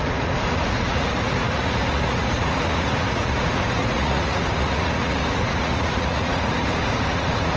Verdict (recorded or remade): remade